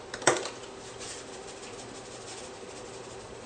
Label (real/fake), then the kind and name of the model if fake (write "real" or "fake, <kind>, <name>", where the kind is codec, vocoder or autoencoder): real